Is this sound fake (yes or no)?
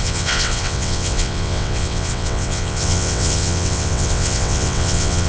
yes